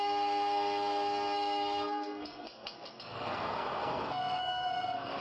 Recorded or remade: remade